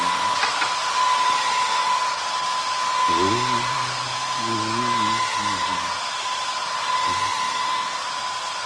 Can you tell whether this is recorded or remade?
recorded